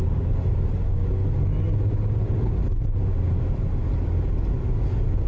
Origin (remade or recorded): recorded